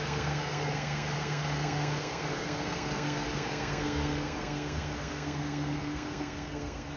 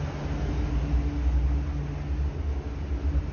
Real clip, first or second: second